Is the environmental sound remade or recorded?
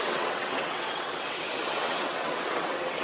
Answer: remade